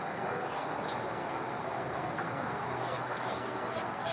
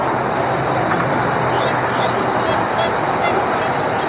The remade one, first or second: first